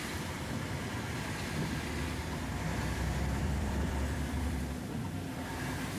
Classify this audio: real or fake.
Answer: fake